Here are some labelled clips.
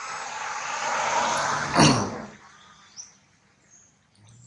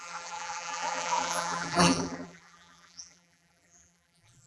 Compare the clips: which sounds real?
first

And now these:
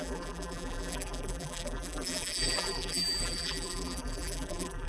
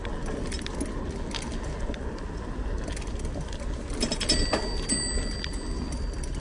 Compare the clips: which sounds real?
second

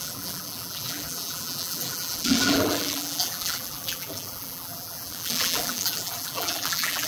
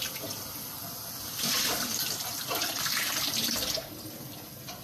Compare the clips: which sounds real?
second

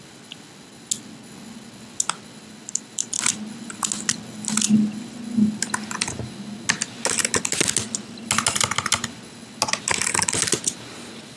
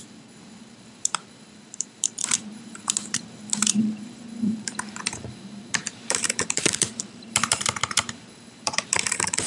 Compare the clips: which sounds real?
first